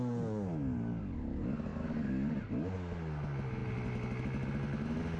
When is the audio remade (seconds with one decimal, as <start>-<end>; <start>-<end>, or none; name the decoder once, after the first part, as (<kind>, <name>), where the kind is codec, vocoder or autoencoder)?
none